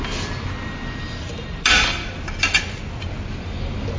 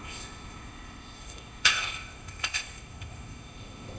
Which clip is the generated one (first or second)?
second